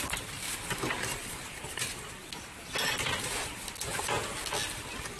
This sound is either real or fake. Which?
real